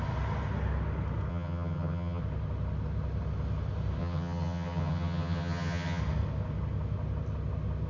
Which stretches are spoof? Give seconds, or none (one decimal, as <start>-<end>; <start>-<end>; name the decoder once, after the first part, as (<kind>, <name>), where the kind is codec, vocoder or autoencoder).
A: 1.3-2.2 (vocoder, HiFi-GAN); 4.0-6.0